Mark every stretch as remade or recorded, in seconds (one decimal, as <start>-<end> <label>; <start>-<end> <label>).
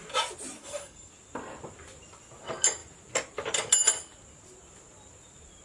0.0-0.6 recorded; 0.6-1.1 remade; 1.1-5.6 recorded